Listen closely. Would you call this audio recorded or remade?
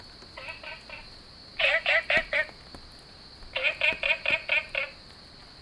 recorded